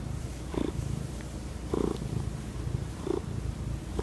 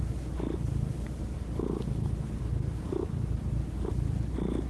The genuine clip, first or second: second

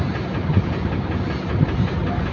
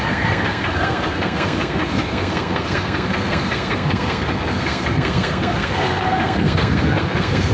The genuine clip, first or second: first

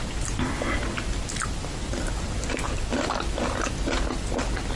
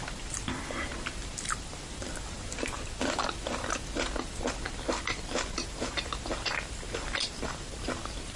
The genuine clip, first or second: first